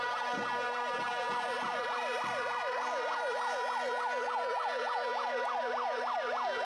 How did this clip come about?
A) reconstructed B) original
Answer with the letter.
B